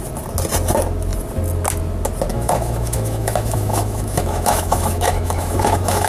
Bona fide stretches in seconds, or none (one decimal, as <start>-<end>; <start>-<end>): 0.0-2.3